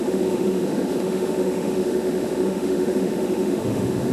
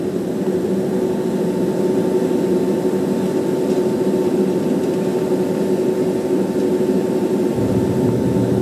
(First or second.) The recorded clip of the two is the second